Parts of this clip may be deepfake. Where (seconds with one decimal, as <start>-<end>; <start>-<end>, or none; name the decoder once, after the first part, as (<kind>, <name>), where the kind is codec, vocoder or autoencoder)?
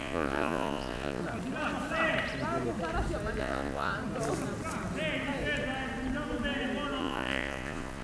0.0-1.2 (vocoder, Vocos); 3.4-3.9; 7.0-8.0